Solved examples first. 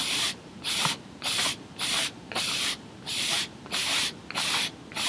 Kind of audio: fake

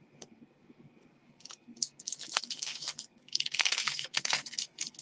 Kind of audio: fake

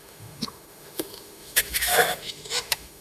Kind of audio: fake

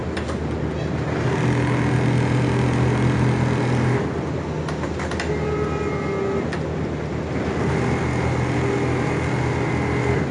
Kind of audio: real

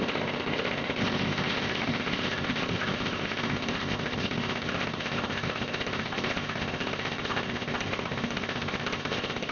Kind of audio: fake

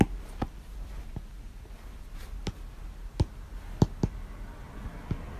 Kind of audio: real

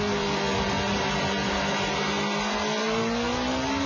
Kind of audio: real